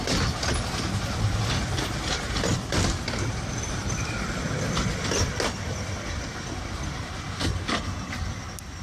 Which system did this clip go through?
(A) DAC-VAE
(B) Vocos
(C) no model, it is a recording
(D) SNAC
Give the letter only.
C